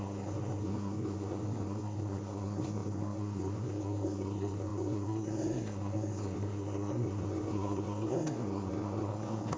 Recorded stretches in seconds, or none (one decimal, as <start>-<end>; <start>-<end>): none